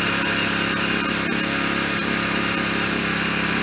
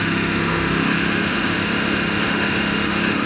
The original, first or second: first